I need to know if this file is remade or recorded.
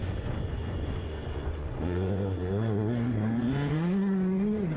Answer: remade